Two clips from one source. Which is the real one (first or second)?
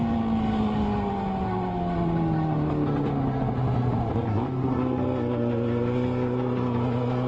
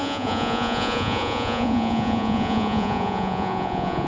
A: first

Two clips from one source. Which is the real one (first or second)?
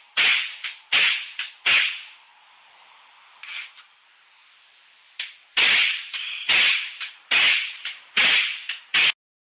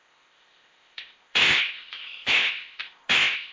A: first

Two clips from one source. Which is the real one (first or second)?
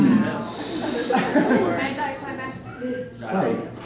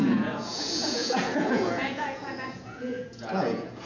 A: first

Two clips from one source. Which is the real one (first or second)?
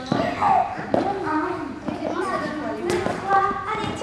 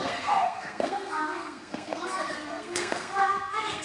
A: first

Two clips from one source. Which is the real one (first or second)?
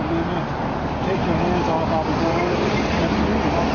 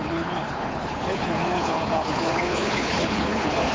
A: first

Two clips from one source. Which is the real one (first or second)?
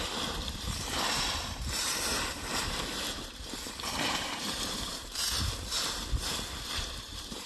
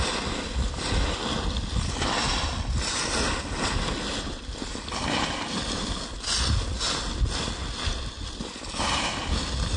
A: second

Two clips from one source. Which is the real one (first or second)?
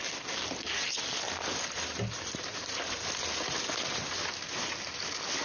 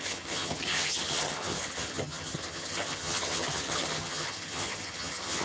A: first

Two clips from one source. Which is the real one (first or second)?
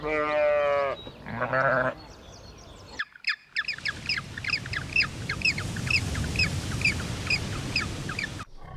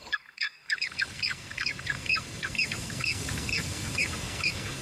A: first